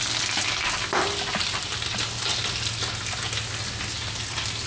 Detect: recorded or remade recorded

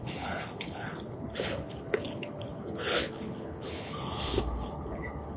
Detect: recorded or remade remade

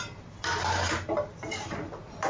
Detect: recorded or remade recorded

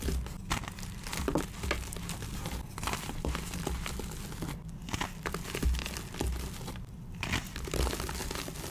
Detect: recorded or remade recorded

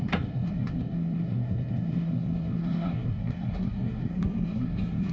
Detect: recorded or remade remade